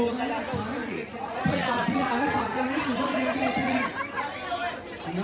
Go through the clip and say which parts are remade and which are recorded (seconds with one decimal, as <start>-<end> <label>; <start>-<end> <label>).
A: 0.0-0.8 recorded; 0.8-3.9 remade; 3.9-5.2 recorded